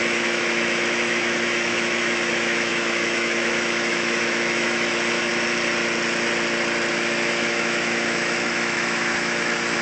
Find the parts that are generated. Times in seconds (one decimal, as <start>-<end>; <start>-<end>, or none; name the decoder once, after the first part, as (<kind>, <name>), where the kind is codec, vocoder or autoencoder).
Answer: 0.0-5.3 (autoencoder, DAC-VAE); 6.9-9.8